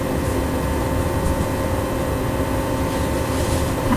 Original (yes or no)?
yes